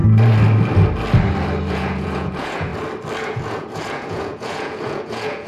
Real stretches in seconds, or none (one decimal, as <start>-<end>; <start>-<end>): 0.0-1.7; 2.7-3.2